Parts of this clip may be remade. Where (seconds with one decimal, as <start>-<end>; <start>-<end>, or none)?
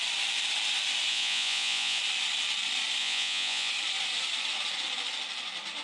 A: 1.1-2.0; 3.0-3.7